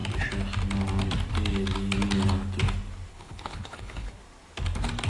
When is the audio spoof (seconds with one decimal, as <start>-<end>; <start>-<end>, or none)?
3.1-4.2